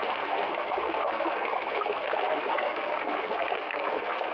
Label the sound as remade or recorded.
remade